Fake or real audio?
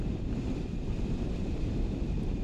fake